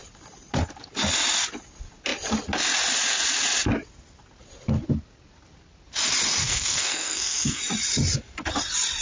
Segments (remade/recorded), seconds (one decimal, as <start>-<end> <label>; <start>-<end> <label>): 0.0-6.4 recorded; 6.4-7.6 remade; 7.6-9.0 recorded